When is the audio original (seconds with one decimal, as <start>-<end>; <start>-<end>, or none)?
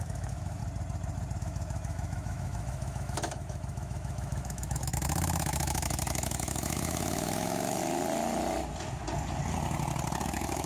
0.6-1.4; 7.8-10.2